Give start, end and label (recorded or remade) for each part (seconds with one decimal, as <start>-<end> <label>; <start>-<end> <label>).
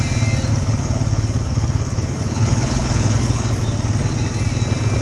0.0-0.5 recorded; 0.5-3.5 remade; 3.5-5.0 recorded